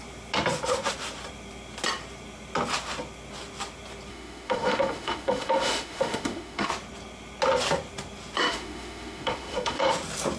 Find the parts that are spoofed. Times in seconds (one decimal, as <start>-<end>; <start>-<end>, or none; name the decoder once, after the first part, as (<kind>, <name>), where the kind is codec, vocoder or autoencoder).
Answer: 4.1-6.7 (autoencoder, DAC-VAE); 8.4-9.8